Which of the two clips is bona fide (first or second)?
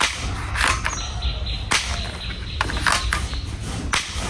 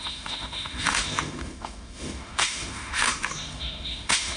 first